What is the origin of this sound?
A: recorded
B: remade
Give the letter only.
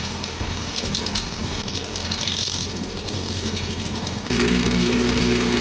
B